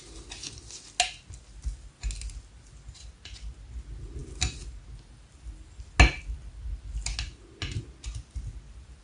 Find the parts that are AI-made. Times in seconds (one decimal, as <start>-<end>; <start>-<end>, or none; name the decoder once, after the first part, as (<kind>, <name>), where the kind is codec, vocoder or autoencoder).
none